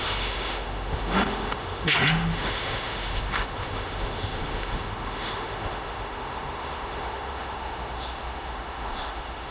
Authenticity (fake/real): fake